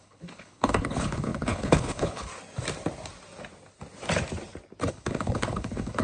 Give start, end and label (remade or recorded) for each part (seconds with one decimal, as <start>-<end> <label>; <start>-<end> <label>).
0.0-2.3 remade; 2.3-4.9 recorded; 4.9-6.0 remade

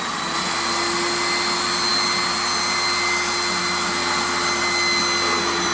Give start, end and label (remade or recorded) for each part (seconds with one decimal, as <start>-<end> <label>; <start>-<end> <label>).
0.0-5.7 recorded

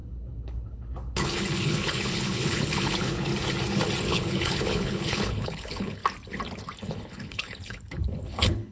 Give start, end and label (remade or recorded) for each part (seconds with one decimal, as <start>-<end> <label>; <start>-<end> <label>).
0.0-3.3 remade; 3.3-4.1 recorded; 4.1-6.0 remade; 6.0-6.8 recorded; 6.8-8.7 remade

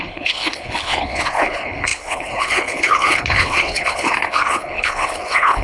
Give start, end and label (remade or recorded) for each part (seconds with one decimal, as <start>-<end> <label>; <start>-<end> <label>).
0.0-5.6 remade

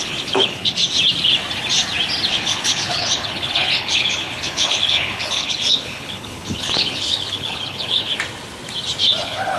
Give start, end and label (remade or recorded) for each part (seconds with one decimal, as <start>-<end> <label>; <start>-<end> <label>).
0.0-0.8 remade; 0.8-2.3 recorded; 2.3-8.1 remade; 8.1-9.2 recorded; 9.2-9.6 remade

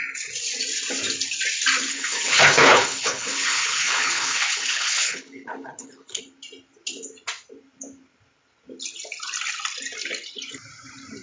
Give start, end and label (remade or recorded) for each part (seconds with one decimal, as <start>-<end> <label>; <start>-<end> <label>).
0.0-1.9 recorded; 1.9-6.2 remade; 6.2-11.2 recorded

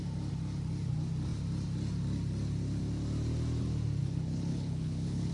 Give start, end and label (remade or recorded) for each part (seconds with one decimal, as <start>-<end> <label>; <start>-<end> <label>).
0.0-4.0 recorded; 4.0-5.3 remade

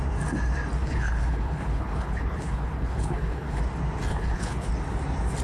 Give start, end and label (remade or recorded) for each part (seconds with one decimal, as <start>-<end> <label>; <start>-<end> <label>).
0.0-0.8 recorded; 0.8-3.6 remade; 3.6-4.1 recorded; 4.1-4.7 remade; 4.7-5.4 recorded